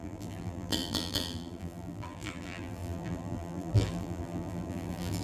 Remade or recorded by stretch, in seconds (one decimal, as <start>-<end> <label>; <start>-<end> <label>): 0.0-5.2 remade